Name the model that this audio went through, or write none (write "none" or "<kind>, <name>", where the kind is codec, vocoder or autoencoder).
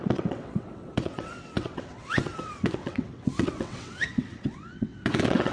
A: vocoder, WaveNeXt